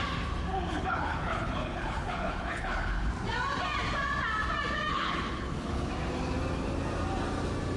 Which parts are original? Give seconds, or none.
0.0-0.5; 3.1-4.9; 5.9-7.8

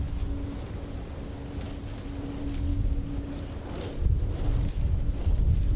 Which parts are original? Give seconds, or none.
0.0-2.7; 3.3-5.8

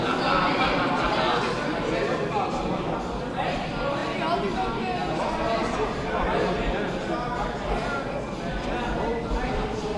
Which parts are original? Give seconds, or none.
0.0-9.1

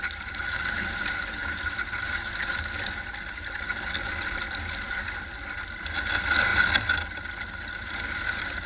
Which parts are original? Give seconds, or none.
0.0-8.7

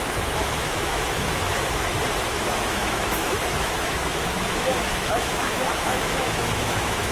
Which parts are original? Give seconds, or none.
1.9-2.4

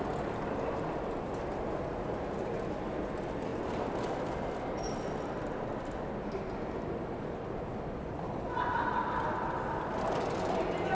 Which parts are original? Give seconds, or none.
0.0-10.9

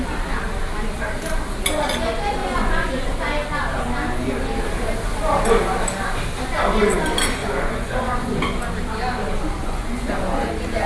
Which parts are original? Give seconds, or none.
0.0-2.4; 2.9-7.4; 8.7-9.6; 10.5-10.9

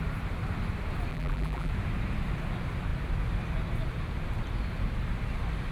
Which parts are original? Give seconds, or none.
0.0-1.1; 1.7-5.7